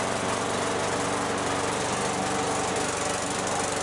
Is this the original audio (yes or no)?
yes